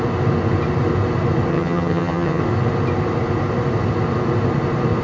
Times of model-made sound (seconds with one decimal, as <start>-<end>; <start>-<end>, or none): 1.5-2.4